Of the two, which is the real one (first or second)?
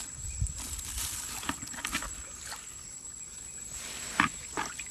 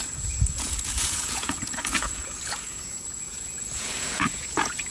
first